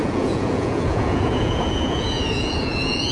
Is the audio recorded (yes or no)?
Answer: no